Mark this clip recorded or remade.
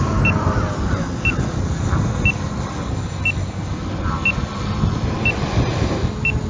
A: recorded